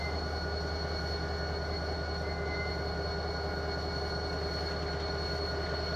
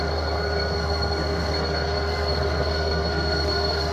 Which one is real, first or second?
first